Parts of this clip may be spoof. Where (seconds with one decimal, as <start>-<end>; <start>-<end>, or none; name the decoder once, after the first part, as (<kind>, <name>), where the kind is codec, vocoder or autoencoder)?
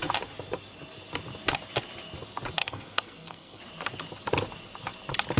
2.6-3.6 (codec, SNAC)